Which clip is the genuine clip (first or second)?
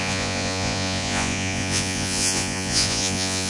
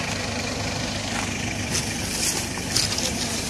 second